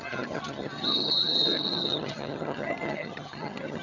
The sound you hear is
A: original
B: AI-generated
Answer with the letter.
B